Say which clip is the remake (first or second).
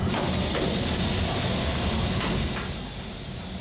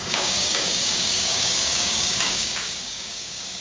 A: second